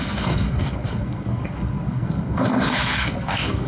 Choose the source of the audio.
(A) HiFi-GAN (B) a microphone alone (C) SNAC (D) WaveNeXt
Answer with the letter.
C